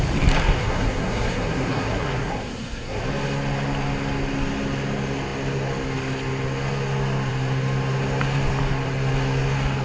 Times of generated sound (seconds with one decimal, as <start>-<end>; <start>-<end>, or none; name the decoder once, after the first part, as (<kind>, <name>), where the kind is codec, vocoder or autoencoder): 0.6-3.0 (codec, SNAC)